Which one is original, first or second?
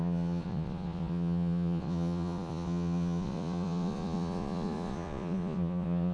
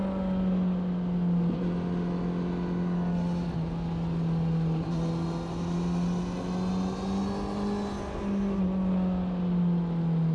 second